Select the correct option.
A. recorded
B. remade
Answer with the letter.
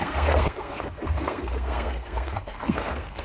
B